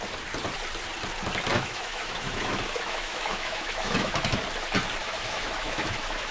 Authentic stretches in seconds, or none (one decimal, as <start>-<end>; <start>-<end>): 0.0-1.5; 4.4-5.0